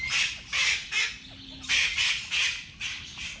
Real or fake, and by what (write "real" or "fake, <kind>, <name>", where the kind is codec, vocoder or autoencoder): real